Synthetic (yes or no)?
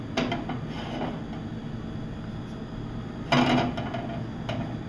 no